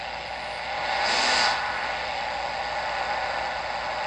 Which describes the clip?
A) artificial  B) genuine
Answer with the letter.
B